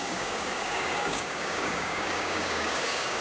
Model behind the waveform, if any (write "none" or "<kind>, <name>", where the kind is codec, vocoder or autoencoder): codec, DAC